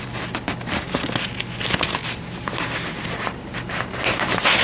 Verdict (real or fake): real